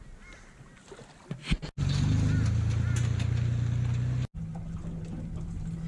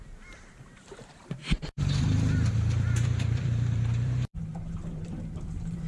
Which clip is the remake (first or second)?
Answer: second